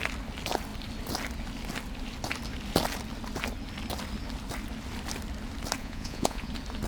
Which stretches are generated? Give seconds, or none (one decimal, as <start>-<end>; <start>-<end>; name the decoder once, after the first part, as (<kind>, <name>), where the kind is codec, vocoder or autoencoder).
5.8-6.5 (vocoder, Vocos)